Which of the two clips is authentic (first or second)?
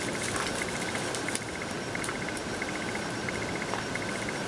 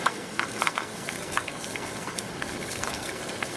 first